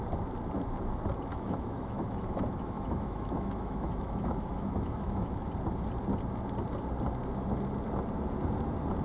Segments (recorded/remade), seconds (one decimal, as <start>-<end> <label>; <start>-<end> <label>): 0.0-1.3 recorded; 1.3-5.5 remade; 5.5-9.0 recorded